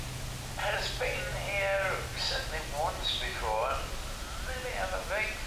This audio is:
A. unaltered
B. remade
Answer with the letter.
A